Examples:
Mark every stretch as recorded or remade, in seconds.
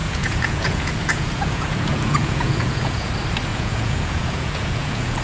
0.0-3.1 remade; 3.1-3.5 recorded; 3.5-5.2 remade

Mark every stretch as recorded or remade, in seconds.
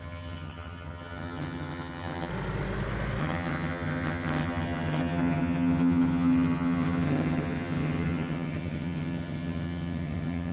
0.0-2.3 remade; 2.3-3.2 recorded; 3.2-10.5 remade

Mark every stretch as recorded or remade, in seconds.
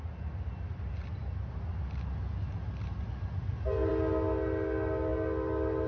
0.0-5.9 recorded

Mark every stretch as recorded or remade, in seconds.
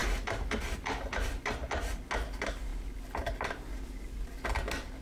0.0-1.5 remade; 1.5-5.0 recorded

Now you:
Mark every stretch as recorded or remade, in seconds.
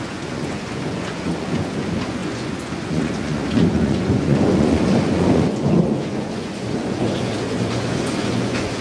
0.0-8.8 remade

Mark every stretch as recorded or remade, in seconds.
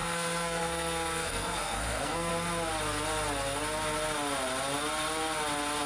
0.0-2.3 remade; 2.3-5.9 recorded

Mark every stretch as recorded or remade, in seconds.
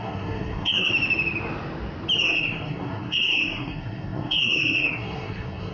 0.0-0.9 remade; 0.9-2.2 recorded; 2.2-5.7 remade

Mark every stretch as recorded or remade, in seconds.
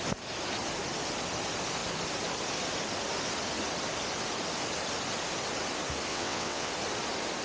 0.0-6.1 recorded; 6.1-6.7 remade; 6.7-7.4 recorded